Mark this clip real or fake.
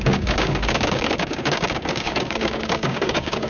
fake